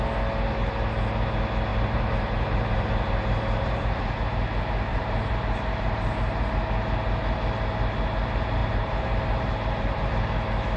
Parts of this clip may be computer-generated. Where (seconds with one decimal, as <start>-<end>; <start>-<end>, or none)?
1.7-4.2; 4.9-6.5; 8.6-10.1